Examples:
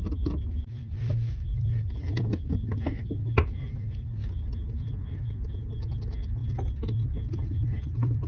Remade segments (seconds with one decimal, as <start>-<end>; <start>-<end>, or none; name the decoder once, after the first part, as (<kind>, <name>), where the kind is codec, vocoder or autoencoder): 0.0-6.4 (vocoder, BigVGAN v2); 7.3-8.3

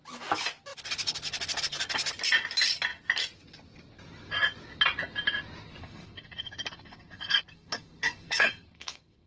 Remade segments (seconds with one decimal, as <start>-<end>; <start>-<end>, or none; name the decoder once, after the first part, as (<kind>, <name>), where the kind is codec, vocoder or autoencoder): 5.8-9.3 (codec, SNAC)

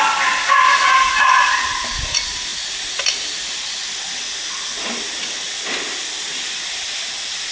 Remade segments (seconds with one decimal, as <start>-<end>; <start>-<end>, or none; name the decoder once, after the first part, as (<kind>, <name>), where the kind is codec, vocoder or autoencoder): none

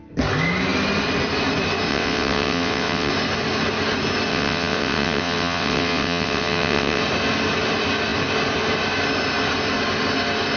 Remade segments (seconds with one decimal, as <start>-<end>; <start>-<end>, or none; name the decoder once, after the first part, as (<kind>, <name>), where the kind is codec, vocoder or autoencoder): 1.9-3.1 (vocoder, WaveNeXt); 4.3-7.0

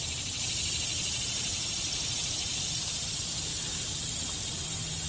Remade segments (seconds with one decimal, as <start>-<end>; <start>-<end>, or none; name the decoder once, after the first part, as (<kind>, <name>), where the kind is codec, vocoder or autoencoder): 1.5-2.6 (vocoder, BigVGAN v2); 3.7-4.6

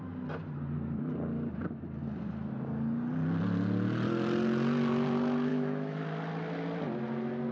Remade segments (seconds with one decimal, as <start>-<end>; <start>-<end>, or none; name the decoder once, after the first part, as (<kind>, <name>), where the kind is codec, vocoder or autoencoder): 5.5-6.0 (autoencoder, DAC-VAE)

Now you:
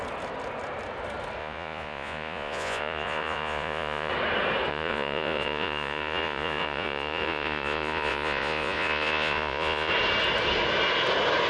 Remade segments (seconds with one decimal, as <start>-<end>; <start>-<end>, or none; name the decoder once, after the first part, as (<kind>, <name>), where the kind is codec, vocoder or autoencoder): 1.4-4.1 (vocoder, Vocos); 4.7-9.9